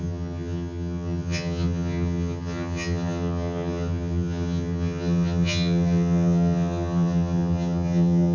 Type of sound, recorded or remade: remade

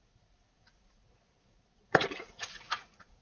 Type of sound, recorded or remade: remade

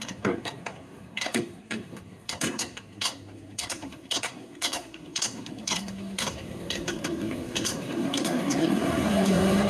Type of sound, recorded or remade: remade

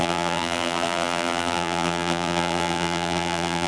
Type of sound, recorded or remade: remade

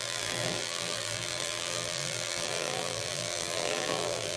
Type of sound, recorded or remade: remade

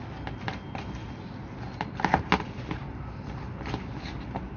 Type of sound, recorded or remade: recorded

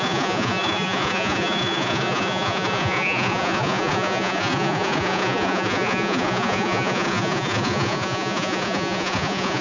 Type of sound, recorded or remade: remade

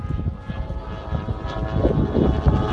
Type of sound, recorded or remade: recorded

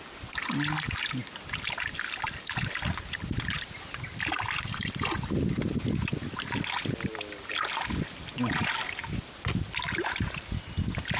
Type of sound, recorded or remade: recorded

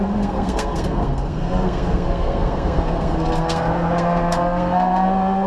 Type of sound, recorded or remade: remade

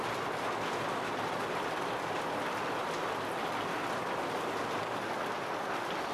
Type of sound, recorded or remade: recorded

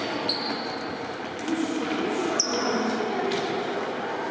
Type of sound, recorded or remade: recorded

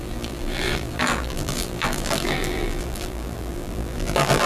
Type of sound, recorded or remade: remade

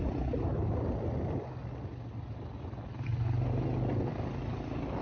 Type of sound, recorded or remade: recorded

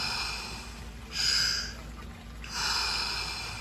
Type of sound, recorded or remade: recorded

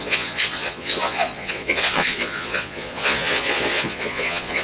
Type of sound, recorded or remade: remade